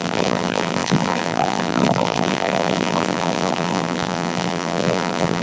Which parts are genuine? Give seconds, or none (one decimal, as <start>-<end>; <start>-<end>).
none